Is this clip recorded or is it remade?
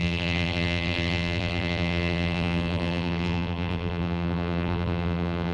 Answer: remade